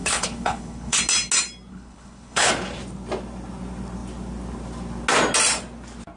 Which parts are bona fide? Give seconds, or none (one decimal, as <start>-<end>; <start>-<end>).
1.0-1.7; 2.5-6.2